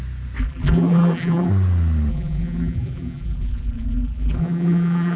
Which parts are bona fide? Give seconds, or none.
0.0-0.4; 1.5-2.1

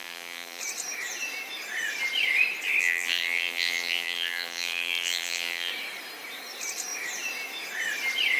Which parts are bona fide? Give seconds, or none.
0.6-2.8; 5.7-8.4

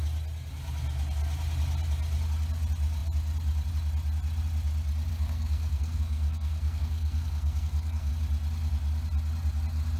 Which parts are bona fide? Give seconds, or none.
0.0-5.1; 8.1-10.0

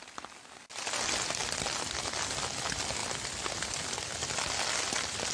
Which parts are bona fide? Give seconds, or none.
0.0-5.3